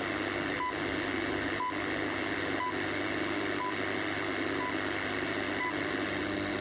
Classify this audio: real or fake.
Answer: real